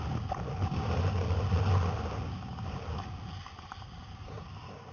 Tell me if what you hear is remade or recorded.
recorded